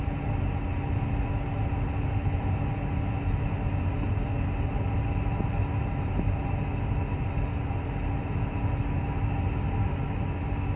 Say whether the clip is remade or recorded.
recorded